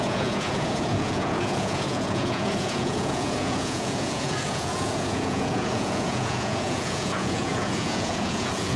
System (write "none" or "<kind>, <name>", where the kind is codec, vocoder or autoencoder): vocoder, Vocos